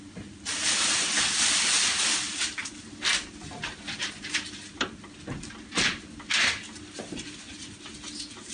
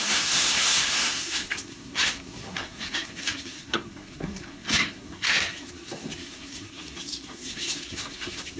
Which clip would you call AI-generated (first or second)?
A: second